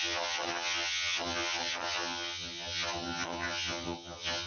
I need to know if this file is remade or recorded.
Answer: remade